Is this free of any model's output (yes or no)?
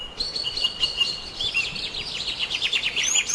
yes